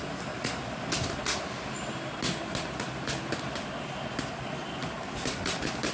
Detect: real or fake fake